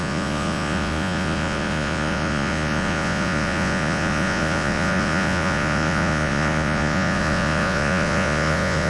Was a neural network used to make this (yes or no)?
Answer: yes